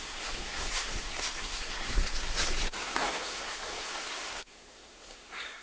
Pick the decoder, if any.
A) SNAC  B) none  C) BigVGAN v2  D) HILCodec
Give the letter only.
A